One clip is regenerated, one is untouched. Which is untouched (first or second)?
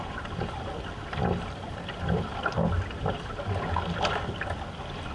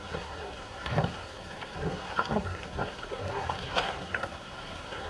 first